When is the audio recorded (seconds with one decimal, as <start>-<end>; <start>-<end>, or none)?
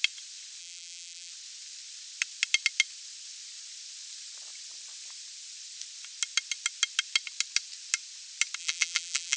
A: 0.0-0.6; 1.3-8.6